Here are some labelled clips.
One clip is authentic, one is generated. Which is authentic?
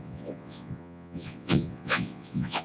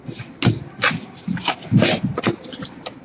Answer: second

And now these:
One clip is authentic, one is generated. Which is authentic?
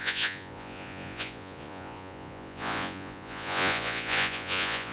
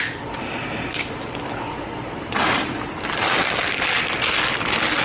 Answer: second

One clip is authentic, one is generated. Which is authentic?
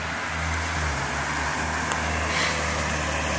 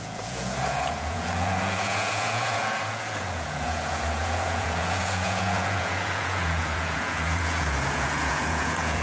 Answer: first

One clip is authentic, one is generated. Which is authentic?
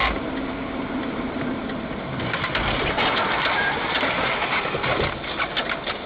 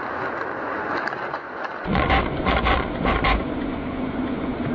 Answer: first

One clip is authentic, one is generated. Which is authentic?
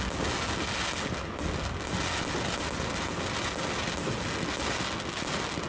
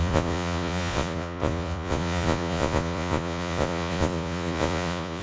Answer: first